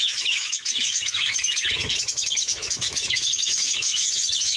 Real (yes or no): no